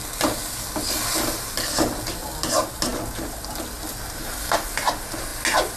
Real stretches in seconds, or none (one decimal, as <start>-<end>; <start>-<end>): 0.0-5.8